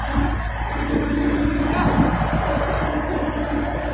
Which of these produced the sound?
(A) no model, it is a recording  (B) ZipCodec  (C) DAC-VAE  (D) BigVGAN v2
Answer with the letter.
A